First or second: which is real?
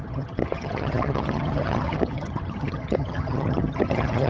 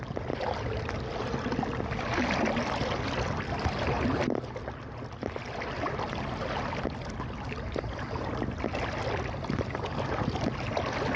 second